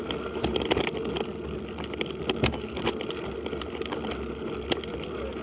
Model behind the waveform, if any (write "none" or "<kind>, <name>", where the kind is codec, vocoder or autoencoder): none